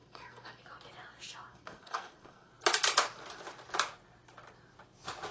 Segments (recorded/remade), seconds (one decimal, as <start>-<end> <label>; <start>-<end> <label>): 0.0-0.6 remade; 0.6-1.5 recorded; 1.5-2.5 remade; 2.5-5.3 recorded